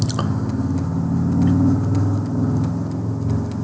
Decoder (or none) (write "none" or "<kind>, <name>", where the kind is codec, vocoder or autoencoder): none